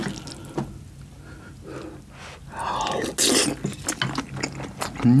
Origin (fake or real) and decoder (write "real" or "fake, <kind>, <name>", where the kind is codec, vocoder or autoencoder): real